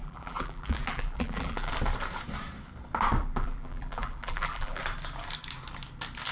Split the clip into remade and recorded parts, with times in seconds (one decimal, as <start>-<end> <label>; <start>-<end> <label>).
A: 0.0-1.7 remade; 1.7-3.2 recorded; 3.2-4.8 remade; 4.8-6.3 recorded

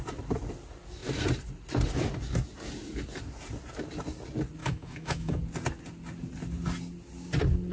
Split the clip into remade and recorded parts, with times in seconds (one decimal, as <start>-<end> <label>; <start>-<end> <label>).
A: 0.0-4.6 recorded; 4.6-5.4 remade; 5.4-7.7 recorded

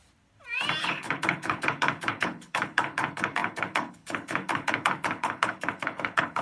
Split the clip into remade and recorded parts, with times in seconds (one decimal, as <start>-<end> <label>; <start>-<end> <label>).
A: 0.0-0.8 recorded; 0.8-6.4 remade

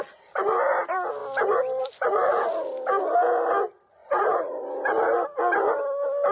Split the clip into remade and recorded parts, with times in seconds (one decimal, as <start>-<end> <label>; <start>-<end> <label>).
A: 0.0-4.0 recorded; 4.0-4.6 remade; 4.6-6.3 recorded

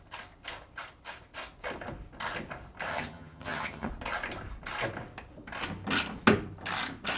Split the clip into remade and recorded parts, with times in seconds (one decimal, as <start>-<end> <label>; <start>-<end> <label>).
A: 0.0-2.9 recorded; 2.9-3.9 remade; 3.9-7.2 recorded

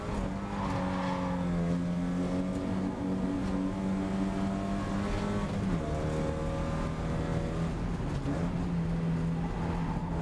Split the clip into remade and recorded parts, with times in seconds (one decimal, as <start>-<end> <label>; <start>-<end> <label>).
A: 0.0-10.2 recorded

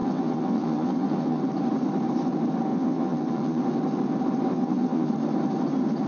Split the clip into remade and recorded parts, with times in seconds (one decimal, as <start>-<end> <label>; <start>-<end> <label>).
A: 0.0-1.4 remade; 1.4-2.7 recorded; 2.7-3.6 remade; 3.6-4.5 recorded; 4.5-5.1 remade; 5.1-6.1 recorded

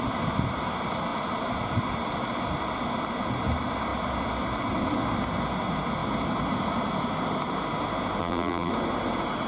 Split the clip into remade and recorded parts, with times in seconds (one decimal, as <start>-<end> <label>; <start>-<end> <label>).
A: 0.0-8.2 recorded; 8.2-8.7 remade; 8.7-9.5 recorded